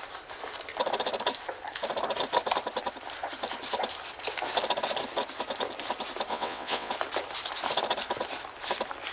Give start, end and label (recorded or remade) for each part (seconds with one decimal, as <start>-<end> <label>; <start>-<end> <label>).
0.0-6.3 recorded; 6.3-6.9 remade; 6.9-9.1 recorded